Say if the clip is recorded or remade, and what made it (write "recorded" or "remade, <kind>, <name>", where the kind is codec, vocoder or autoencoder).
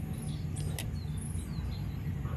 recorded